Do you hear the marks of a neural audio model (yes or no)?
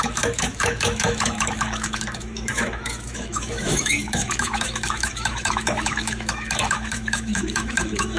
yes